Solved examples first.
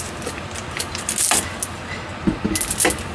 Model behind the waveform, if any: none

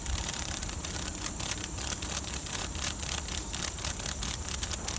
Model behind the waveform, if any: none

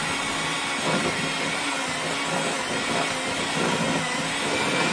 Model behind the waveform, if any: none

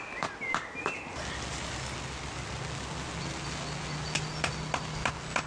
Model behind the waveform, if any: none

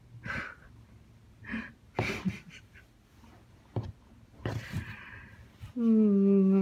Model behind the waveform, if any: none